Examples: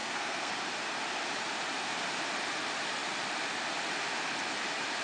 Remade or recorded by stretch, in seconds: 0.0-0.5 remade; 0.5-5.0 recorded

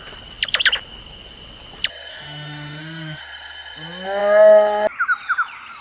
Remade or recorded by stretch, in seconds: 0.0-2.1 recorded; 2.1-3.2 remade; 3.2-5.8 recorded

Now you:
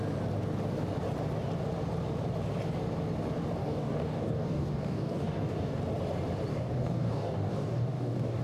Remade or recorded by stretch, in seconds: 0.0-3.6 recorded; 3.6-5.8 remade; 5.8-6.5 recorded; 6.5-8.4 remade

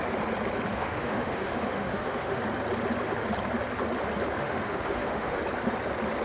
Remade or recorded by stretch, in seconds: 0.0-0.7 recorded; 0.7-2.4 remade; 2.4-4.4 recorded; 4.4-5.4 remade; 5.4-6.2 recorded

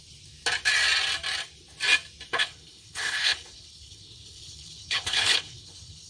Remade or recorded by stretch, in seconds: 0.0-2.3 recorded; 2.3-6.1 remade

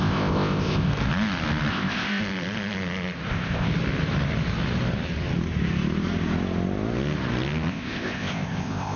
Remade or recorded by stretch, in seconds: 0.0-0.9 remade; 0.9-1.7 recorded; 1.7-2.2 remade; 2.2-3.3 recorded; 3.3-3.7 remade; 3.7-7.7 recorded; 7.7-9.0 remade